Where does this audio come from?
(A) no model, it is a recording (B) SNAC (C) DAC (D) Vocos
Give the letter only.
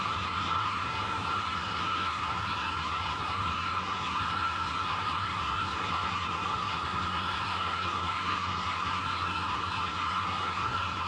B